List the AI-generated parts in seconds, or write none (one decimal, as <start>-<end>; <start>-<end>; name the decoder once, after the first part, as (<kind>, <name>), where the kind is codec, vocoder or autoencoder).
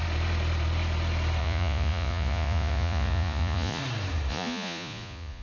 1.4-3.8 (vocoder, Vocos); 4.3-5.4